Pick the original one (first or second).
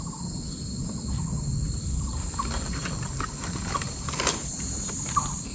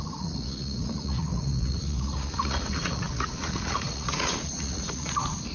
first